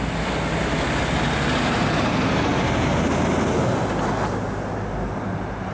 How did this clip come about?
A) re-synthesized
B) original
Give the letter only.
B